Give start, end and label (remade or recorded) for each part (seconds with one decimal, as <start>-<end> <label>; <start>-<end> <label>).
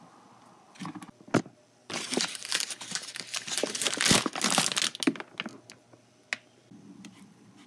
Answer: 0.0-1.8 recorded; 1.8-3.1 remade; 3.1-7.7 recorded